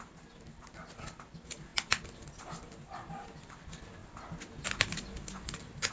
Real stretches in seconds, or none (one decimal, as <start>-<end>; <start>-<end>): 0.0-5.9